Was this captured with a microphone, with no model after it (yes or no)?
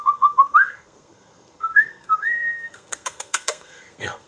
no